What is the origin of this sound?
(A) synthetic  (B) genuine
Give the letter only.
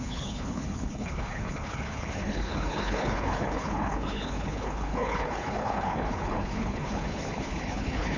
A